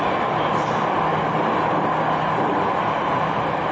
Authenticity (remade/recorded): recorded